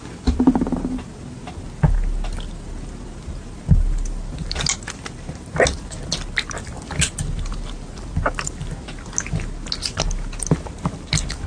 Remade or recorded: recorded